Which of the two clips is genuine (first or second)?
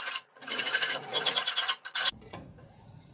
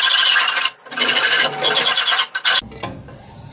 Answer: second